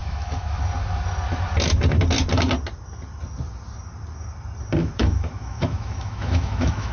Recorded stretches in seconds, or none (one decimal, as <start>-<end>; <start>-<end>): 0.6-4.8

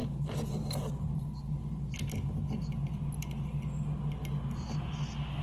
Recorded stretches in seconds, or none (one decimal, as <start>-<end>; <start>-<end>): 0.0-5.4